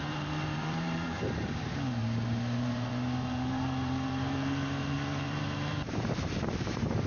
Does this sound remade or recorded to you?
remade